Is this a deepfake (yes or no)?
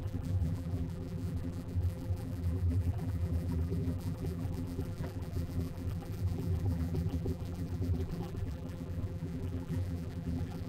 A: yes